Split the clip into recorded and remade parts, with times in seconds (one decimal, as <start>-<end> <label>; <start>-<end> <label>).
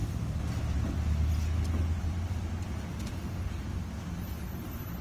0.0-2.9 recorded; 2.9-3.5 remade; 3.5-5.0 recorded